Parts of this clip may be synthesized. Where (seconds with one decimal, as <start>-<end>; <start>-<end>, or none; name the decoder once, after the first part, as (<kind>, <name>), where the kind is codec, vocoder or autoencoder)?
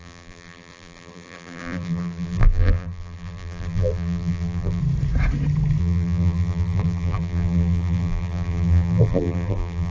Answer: 0.0-4.8 (vocoder, BigVGAN v2); 5.8-9.9